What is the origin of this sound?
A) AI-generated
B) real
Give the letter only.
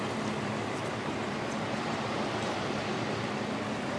B